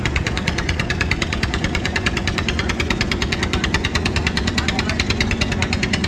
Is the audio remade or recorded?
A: remade